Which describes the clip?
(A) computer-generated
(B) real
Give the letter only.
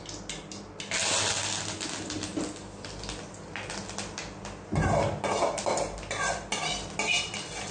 B